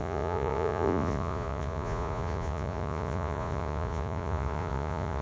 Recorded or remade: remade